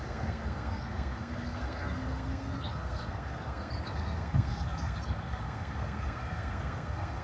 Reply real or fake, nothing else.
fake